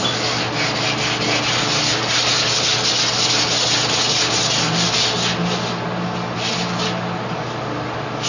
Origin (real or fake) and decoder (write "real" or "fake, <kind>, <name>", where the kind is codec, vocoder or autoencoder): real